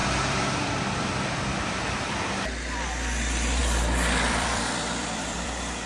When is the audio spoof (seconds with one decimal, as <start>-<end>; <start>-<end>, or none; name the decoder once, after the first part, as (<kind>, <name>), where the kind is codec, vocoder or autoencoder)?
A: 0.0-2.2 (vocoder, BigVGAN v2); 3.6-5.9